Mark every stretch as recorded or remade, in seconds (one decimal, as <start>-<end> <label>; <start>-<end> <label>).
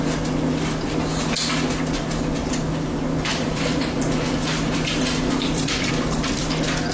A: 0.0-3.3 recorded; 3.3-5.9 remade; 5.9-6.9 recorded